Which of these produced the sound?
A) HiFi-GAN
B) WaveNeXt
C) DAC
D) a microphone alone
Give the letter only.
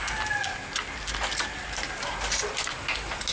D